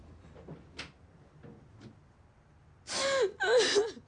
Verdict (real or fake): real